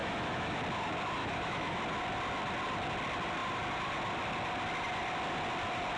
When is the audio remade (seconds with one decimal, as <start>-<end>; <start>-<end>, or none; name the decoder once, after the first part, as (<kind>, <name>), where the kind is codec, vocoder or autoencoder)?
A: 0.0-0.6 (autoencoder, DAC-VAE); 1.2-1.8